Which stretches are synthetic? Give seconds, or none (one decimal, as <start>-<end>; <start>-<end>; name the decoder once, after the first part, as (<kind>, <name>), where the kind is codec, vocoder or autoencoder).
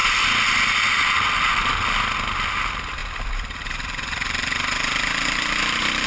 0.0-1.5 (vocoder, BigVGAN v2); 3.0-6.1